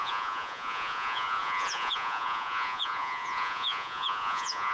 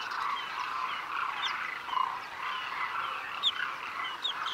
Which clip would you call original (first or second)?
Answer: second